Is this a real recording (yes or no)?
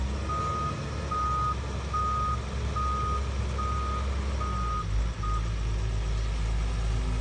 yes